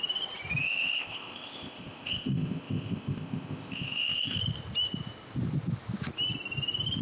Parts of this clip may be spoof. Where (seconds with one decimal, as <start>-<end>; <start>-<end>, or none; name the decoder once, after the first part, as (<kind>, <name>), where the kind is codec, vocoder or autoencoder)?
0.6-4.4 (codec, ZipCodec)